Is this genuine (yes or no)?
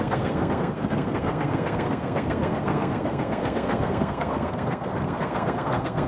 no